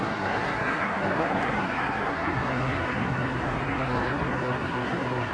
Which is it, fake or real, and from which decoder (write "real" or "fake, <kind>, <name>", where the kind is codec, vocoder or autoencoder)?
fake, codec, SNAC